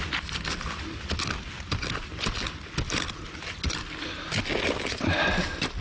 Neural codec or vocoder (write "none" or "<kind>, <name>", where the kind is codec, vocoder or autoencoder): none